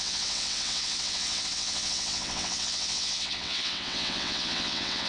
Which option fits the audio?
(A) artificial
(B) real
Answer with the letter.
A